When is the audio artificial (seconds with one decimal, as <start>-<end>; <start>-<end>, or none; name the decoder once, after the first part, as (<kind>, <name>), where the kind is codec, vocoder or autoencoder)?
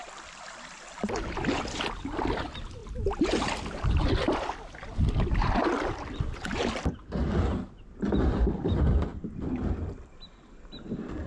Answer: 2.4-2.8 (vocoder, BigVGAN v2); 5.6-11.3